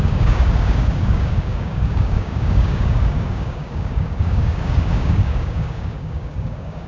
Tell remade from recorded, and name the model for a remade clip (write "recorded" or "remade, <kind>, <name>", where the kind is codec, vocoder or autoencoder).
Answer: remade, codec, DAC